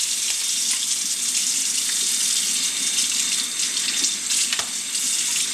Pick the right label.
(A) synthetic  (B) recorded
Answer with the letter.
B